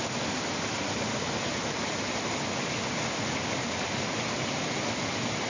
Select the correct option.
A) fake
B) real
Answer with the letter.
B